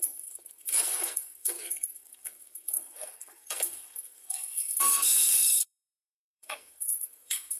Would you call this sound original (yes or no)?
no